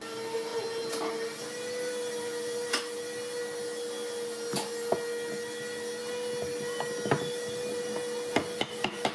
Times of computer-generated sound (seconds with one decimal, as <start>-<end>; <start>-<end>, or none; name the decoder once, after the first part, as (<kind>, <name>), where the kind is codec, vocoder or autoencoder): none